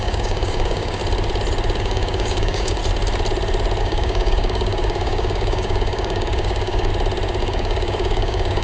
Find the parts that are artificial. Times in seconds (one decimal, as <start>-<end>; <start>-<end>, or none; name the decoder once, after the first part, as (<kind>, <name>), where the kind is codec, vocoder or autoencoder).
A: 0.0-1.0 (codec, DAC); 1.8-2.8; 3.8-6.9; 7.4-8.6